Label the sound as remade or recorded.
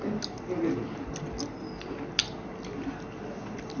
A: recorded